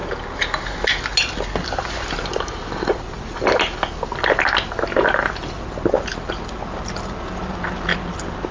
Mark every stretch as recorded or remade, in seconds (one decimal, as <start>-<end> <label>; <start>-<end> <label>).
0.0-8.5 recorded